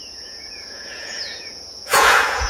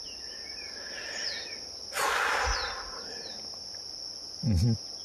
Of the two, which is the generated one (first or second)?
first